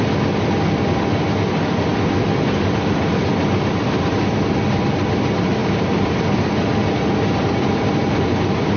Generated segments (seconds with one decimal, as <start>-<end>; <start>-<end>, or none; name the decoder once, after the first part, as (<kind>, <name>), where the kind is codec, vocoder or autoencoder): 5.6-6.5 (vocoder, BigVGAN v2)